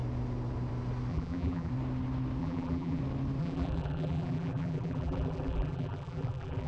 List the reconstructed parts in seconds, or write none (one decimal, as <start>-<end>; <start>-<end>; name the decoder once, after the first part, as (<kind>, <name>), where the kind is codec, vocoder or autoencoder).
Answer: 1.1-1.7 (vocoder, BigVGAN v2); 2.4-3.0; 3.4-6.7